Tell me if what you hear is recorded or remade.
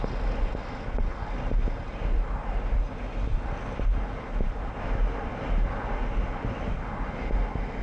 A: recorded